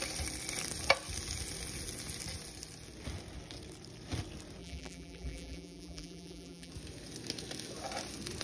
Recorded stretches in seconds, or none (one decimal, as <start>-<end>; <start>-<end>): 0.0-4.6; 6.7-8.4